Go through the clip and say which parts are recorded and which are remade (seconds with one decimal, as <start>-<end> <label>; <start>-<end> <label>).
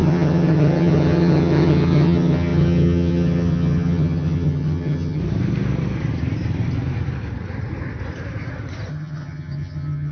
0.0-5.2 remade; 5.2-8.9 recorded; 8.9-10.1 remade